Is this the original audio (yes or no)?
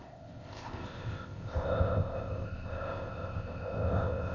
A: no